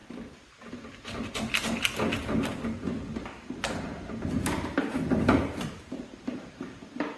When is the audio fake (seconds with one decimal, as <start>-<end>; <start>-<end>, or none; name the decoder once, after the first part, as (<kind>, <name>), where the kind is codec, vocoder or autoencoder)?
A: 0.0-0.7 (vocoder, BigVGAN v2); 4.9-6.7